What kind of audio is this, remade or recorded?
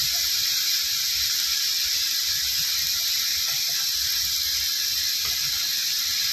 recorded